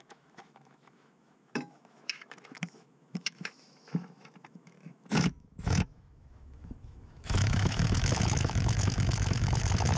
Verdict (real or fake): fake